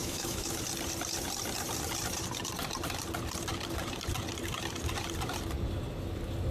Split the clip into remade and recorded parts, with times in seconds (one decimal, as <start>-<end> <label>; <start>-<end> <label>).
0.0-0.6 remade; 0.6-6.5 recorded